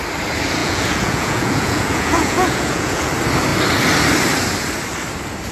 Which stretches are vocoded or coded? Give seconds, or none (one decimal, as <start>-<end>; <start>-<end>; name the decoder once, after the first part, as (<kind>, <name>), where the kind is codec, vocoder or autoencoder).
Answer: 0.6-3.1 (vocoder, Vocos)